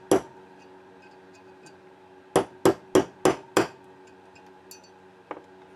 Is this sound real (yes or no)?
yes